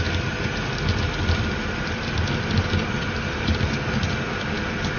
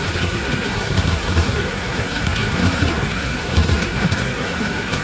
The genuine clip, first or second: first